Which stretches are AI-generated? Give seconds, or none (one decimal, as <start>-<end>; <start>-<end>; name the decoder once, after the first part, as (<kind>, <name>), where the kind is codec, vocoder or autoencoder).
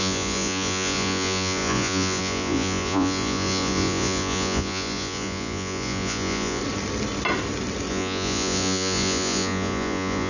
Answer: 0.0-6.6 (vocoder, Vocos); 7.9-10.3